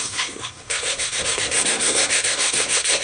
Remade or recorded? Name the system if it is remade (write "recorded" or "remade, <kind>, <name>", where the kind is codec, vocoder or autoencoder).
remade, codec, SNAC